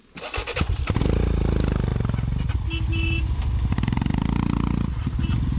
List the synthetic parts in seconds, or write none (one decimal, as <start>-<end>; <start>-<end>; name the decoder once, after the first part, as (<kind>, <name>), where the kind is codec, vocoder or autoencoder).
none